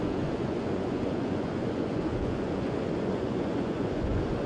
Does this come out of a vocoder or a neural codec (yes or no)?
yes